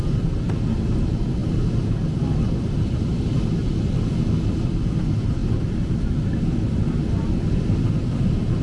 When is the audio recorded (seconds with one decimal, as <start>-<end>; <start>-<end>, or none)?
0.0-8.6